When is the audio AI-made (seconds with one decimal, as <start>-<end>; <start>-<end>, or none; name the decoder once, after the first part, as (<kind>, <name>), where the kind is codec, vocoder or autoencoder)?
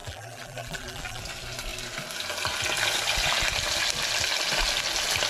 0.0-1.2 (vocoder, BigVGAN v2)